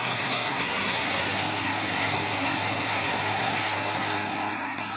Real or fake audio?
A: fake